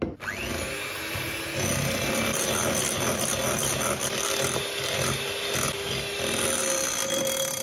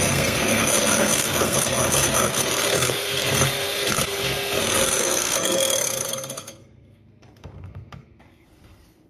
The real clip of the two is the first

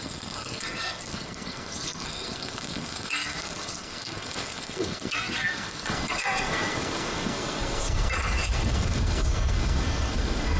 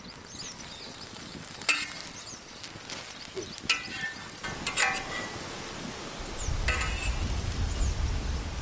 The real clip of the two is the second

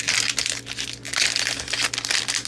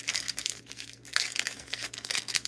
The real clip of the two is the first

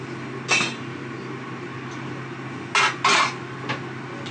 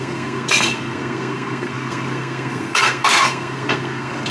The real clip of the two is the first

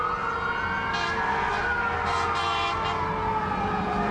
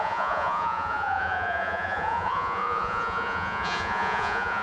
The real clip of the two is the first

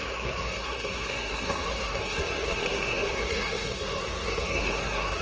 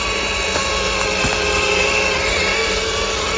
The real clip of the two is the second